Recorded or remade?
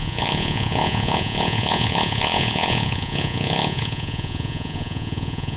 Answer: remade